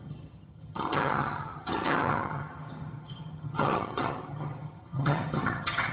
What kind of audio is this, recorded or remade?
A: remade